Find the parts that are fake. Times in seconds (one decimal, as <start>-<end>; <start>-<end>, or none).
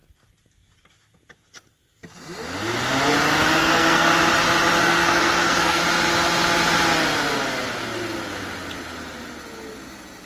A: 3.6-4.1; 4.8-5.8